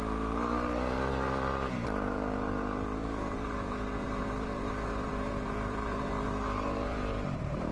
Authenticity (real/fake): fake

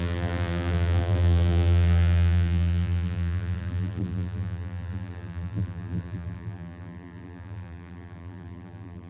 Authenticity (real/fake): fake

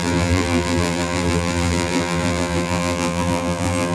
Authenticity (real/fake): fake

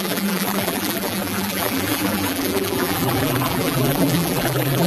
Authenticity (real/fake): fake